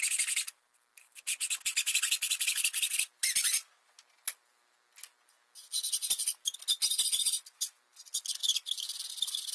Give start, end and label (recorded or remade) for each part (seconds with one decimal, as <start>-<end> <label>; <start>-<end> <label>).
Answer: 0.0-3.7 remade; 3.7-7.3 recorded; 7.3-8.4 remade; 8.4-9.1 recorded; 9.1-9.5 remade